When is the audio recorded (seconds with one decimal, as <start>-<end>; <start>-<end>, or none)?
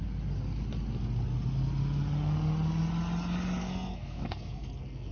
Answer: 0.0-3.6